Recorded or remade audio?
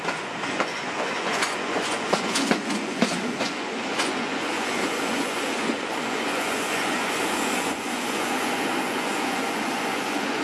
remade